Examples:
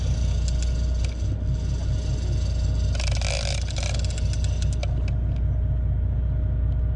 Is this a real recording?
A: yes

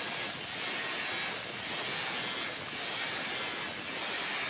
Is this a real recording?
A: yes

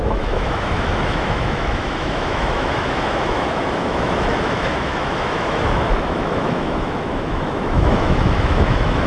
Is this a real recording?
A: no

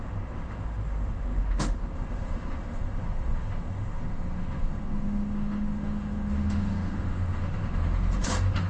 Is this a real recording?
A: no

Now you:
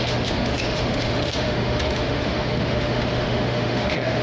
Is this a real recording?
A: no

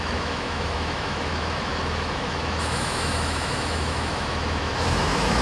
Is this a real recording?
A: no